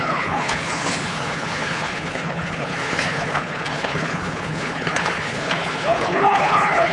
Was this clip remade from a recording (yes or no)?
yes